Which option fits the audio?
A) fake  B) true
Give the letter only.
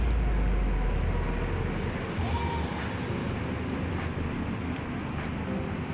B